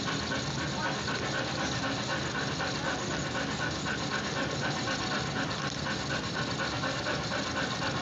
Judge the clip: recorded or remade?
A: recorded